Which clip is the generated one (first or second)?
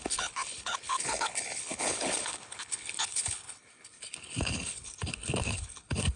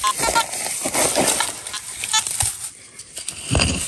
first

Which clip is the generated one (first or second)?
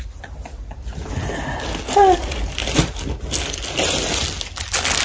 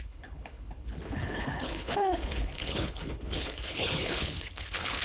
second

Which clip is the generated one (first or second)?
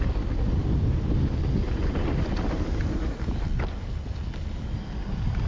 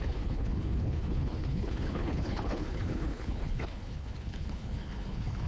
second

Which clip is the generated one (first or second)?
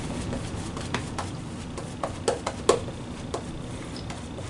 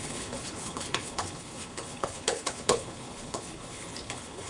second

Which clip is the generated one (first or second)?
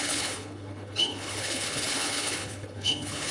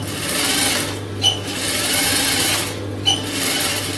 first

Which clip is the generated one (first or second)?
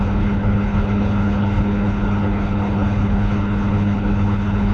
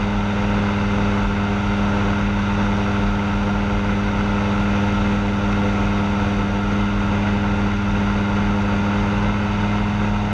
first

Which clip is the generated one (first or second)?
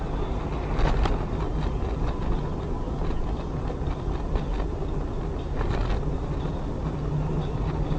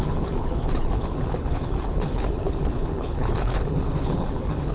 second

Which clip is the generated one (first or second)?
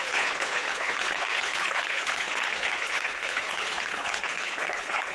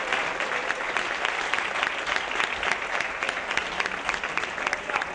first